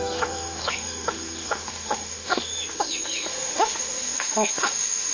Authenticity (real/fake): fake